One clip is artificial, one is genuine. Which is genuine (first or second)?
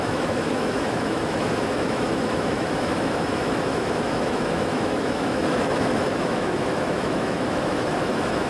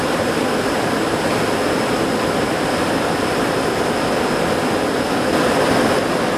second